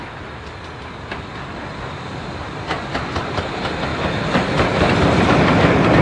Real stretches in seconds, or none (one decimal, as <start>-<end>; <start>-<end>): 0.0-3.9; 5.5-6.0